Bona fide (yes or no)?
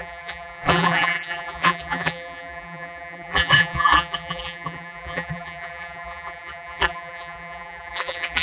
no